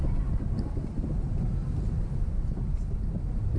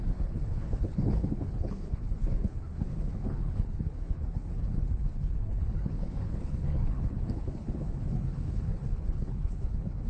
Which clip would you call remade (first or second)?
second